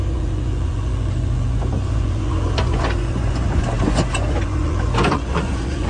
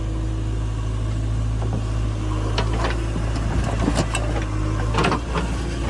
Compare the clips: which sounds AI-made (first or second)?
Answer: first